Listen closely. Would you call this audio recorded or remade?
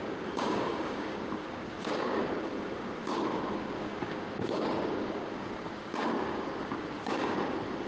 remade